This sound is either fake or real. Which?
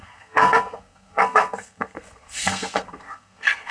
fake